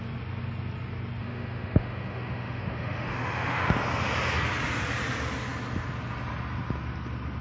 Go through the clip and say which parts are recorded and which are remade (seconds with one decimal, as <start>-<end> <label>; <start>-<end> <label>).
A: 0.0-1.2 recorded; 1.2-3.7 remade; 3.7-7.4 recorded